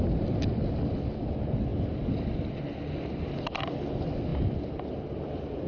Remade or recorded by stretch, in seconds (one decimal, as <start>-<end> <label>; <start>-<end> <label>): 0.0-5.7 recorded